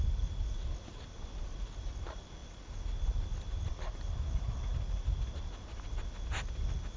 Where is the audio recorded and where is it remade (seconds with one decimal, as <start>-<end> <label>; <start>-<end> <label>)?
0.0-7.0 recorded

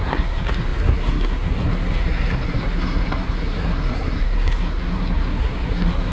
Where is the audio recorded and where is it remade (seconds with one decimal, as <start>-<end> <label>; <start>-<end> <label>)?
0.0-6.1 remade

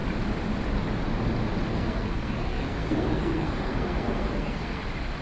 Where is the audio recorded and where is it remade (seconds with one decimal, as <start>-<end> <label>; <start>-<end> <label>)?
0.0-1.7 recorded; 1.7-4.8 remade; 4.8-5.2 recorded

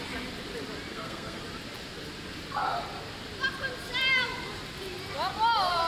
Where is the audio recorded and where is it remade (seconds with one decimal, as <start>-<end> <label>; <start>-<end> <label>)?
0.0-0.9 recorded; 0.9-1.4 remade; 1.4-5.9 recorded

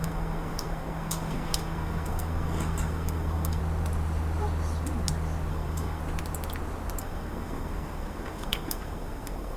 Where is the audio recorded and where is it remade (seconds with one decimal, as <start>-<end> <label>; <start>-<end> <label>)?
0.0-3.6 remade; 3.6-5.5 recorded; 5.5-6.0 remade; 6.0-7.0 recorded; 7.0-9.6 remade